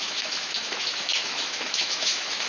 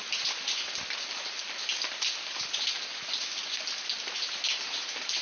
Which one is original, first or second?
second